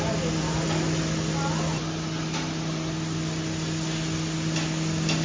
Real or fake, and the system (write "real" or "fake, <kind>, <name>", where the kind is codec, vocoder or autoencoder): real